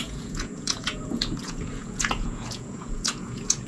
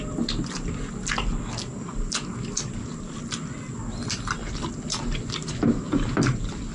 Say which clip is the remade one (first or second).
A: first